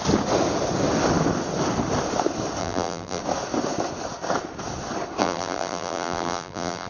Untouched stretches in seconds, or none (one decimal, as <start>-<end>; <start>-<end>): 0.0-2.6; 3.2-5.2